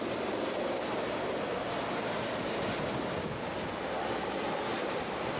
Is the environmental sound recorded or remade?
recorded